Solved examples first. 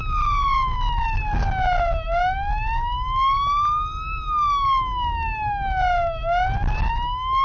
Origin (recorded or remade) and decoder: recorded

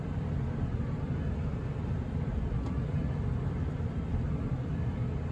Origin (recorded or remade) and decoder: remade, vocoder, BigVGAN v2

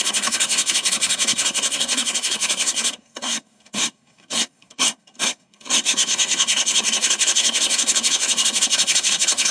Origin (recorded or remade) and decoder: remade, codec, SNAC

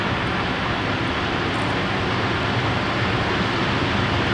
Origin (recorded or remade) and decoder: recorded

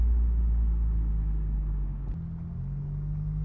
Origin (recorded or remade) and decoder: recorded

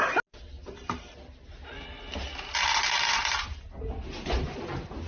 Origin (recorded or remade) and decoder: recorded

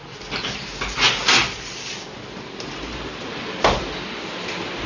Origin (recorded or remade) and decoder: recorded